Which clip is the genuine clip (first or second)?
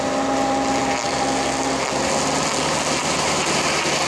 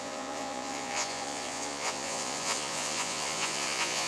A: first